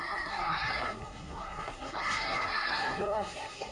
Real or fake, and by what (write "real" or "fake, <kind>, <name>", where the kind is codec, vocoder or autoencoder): fake, codec, SNAC